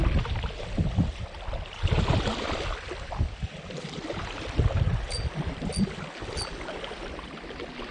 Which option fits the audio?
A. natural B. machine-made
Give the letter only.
A